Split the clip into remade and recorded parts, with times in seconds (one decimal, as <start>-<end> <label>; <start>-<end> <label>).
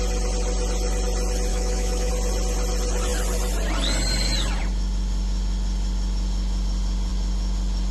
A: 0.0-1.5 recorded; 1.5-2.1 remade; 2.1-7.9 recorded